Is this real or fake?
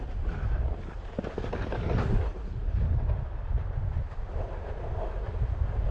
real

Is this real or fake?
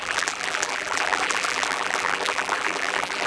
fake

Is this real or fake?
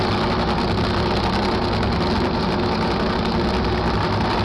real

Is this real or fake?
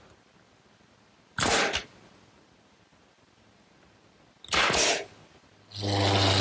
real